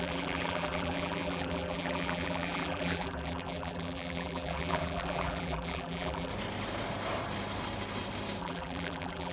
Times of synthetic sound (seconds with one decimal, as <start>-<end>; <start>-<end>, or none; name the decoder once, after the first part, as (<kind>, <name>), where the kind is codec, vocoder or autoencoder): 0.0-6.3 (vocoder, BigVGAN v2); 8.4-9.3